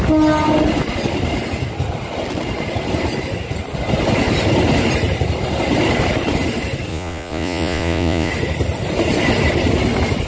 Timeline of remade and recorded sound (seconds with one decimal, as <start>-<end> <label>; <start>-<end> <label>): 0.0-6.9 recorded; 6.9-8.3 remade; 8.3-10.3 recorded